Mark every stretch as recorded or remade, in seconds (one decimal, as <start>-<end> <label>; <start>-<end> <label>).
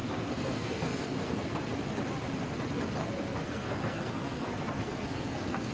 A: 0.0-1.7 remade; 1.7-3.0 recorded; 3.0-5.7 remade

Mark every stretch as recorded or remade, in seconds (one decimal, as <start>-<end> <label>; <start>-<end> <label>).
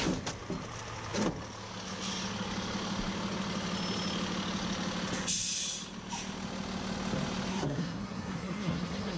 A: 0.0-7.5 recorded; 7.5-9.2 remade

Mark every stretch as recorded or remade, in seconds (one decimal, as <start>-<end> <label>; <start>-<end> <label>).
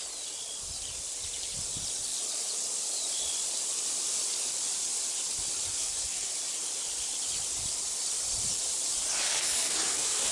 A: 0.0-5.7 recorded; 5.7-6.3 remade; 6.3-9.2 recorded; 9.2-10.3 remade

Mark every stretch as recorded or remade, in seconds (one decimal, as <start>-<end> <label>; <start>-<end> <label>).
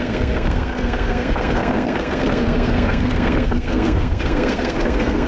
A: 0.0-5.3 remade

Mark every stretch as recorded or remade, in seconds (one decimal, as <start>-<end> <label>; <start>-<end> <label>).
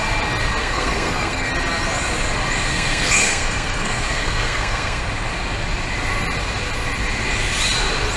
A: 0.0-0.6 recorded; 0.6-1.5 remade; 1.5-2.7 recorded; 2.7-5.0 remade; 5.0-8.2 recorded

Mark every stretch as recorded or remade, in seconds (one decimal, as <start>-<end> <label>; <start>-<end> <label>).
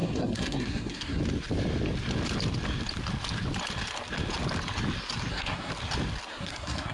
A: 0.0-1.2 remade; 1.2-5.3 recorded; 5.3-5.7 remade; 5.7-6.3 recorded; 6.3-6.9 remade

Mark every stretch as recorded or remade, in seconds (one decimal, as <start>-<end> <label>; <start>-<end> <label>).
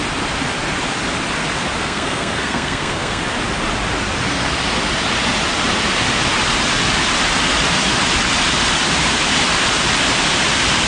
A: 0.0-1.8 recorded; 1.8-3.2 remade; 3.2-10.9 recorded